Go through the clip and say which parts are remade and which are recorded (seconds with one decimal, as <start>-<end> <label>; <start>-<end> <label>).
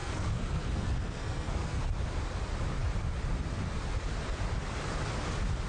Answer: 0.0-1.8 remade; 1.8-5.7 recorded